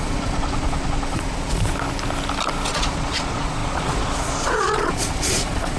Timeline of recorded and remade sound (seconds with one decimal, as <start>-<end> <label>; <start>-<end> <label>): 0.0-1.7 remade; 1.7-2.7 recorded; 2.7-5.8 remade